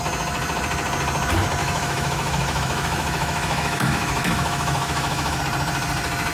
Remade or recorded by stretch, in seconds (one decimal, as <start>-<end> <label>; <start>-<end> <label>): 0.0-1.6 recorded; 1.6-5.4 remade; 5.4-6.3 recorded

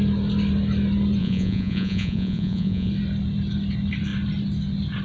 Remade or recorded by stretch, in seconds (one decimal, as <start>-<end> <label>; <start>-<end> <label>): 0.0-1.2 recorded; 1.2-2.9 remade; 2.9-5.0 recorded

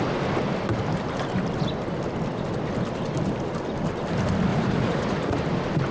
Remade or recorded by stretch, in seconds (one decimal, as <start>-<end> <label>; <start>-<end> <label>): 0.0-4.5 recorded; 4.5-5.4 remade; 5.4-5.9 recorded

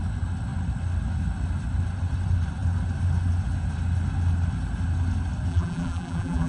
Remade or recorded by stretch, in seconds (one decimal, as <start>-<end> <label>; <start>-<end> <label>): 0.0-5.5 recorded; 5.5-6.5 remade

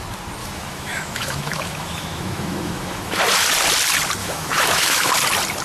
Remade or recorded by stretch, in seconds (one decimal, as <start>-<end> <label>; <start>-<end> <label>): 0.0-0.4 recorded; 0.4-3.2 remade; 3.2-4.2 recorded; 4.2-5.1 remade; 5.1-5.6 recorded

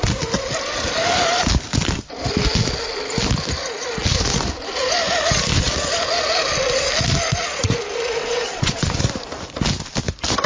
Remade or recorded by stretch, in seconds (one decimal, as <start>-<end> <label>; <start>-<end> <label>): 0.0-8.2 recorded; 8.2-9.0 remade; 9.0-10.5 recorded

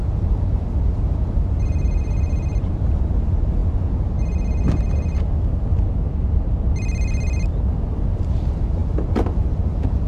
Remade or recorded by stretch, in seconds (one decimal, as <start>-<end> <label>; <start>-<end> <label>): 0.0-10.1 recorded